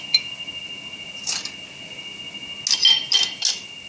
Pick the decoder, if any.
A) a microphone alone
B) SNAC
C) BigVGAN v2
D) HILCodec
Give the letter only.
A